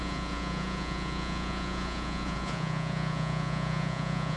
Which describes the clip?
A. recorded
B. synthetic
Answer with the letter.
B